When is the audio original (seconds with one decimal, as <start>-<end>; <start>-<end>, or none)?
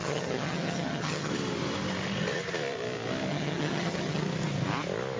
1.3-3.3; 4.2-5.2